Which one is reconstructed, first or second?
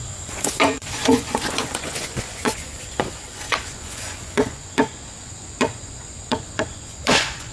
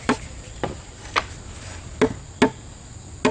first